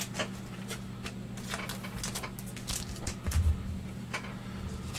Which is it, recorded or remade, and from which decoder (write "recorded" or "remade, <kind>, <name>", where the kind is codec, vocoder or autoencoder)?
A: recorded